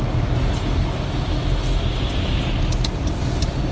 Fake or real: real